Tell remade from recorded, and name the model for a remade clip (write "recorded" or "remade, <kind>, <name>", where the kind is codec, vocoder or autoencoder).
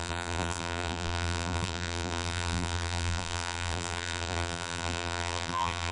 remade, vocoder, BigVGAN v2